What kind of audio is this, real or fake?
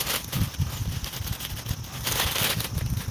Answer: real